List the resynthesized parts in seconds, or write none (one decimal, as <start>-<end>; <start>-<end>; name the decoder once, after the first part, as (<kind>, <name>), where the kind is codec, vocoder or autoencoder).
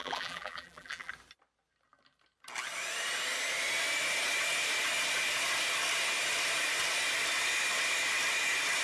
0.0-1.1 (vocoder, BigVGAN v2)